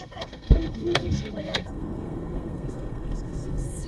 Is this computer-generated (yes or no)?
yes